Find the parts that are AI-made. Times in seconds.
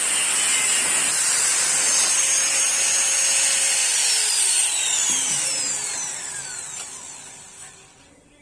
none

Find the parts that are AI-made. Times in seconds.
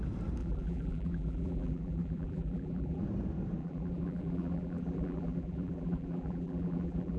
0.4-3.0 (vocoder, BigVGAN v2); 3.6-7.2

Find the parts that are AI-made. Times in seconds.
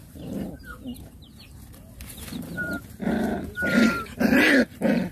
none